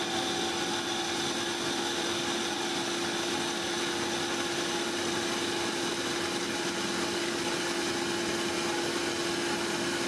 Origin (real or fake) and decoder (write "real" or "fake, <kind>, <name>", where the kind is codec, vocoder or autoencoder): real